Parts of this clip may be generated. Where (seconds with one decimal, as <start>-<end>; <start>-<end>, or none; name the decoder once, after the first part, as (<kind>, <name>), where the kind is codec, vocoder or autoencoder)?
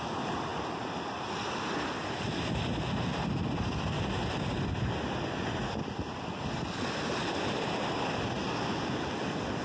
none